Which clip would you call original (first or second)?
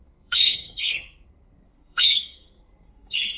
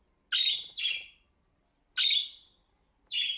second